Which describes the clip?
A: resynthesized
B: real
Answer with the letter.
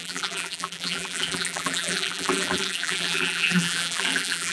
A